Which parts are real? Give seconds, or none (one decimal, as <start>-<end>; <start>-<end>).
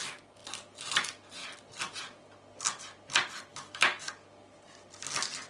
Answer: 0.0-3.5; 4.1-5.5